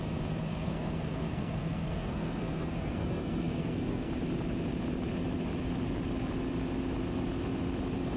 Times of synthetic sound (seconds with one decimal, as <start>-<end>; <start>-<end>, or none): 0.5-4.1